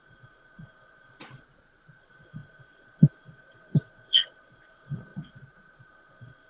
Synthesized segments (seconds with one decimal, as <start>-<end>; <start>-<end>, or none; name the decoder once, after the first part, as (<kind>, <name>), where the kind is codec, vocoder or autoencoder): 0.0-6.5 (vocoder, Vocos)